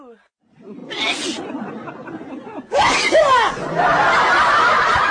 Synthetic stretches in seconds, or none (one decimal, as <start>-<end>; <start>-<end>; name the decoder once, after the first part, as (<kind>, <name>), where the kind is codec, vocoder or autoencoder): none